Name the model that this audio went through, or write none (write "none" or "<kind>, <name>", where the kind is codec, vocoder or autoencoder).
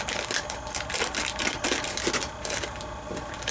none